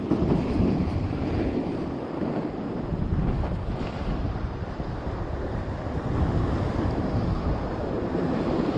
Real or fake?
fake